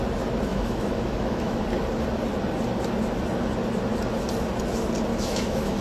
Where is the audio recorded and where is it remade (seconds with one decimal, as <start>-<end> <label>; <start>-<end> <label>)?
0.0-0.5 recorded; 0.5-1.6 remade; 1.6-5.1 recorded; 5.1-5.8 remade

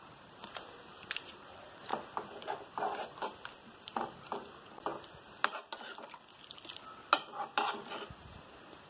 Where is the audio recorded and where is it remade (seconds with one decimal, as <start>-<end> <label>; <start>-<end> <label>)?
0.0-1.9 remade; 1.9-2.7 recorded; 2.7-4.9 remade; 4.9-8.1 recorded; 8.1-8.9 remade

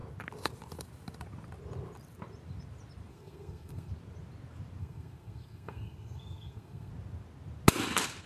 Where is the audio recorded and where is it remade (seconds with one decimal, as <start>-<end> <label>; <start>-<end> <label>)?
0.0-3.1 recorded; 3.1-3.9 remade; 3.9-4.8 recorded; 4.8-6.9 remade; 6.9-8.3 recorded

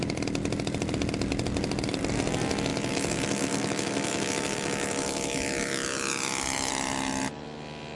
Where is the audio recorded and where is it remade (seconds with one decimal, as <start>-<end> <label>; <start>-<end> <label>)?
0.0-2.7 recorded; 2.7-6.7 remade; 6.7-8.0 recorded

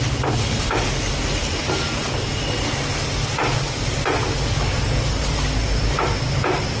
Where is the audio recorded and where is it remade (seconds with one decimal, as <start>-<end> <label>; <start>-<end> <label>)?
0.0-6.8 recorded

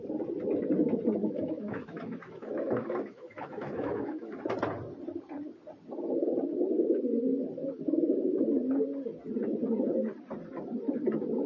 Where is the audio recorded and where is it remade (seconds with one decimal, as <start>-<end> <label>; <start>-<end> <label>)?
0.0-1.2 recorded; 1.2-4.4 remade; 4.4-11.5 recorded

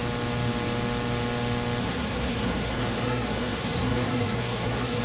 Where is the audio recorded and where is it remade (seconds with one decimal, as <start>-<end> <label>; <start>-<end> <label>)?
0.0-1.8 recorded; 1.8-5.0 remade

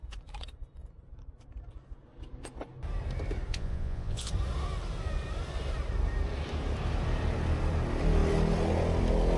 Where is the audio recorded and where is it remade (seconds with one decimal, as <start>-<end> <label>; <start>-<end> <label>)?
0.0-3.5 recorded; 3.5-4.3 remade; 4.3-9.4 recorded